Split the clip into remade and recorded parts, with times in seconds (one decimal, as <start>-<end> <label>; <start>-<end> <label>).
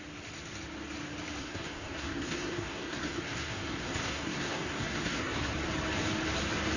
0.0-1.4 recorded; 1.4-5.5 remade; 5.5-6.8 recorded